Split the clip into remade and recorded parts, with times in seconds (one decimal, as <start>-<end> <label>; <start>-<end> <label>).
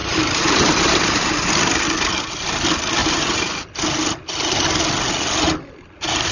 0.0-1.4 remade; 1.4-3.0 recorded; 3.0-3.7 remade; 3.7-6.3 recorded